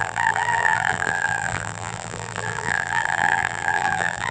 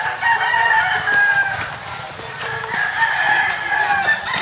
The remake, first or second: first